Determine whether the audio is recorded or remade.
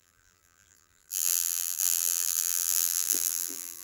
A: remade